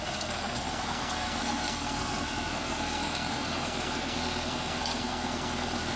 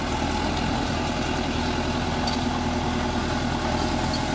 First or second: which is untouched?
second